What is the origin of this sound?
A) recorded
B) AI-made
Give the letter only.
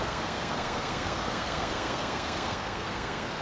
B